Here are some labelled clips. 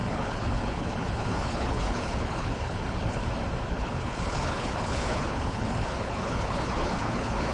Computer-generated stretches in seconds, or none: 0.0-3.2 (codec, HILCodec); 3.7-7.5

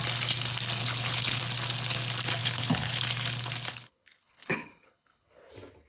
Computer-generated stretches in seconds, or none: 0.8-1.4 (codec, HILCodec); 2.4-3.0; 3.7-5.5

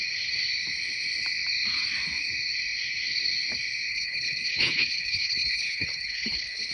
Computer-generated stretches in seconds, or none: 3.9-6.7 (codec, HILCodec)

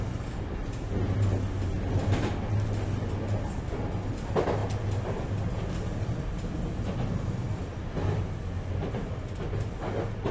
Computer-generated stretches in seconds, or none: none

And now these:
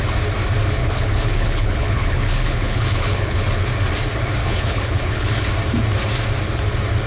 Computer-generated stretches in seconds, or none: 0.8-3.7 (codec, HILCodec); 4.4-5.5

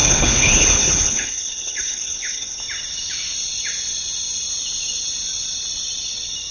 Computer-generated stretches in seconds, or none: 0.0-2.6 (codec, HILCodec)

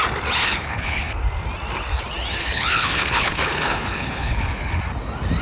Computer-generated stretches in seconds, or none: 0.4-1.1 (codec, HILCodec); 2.4-4.8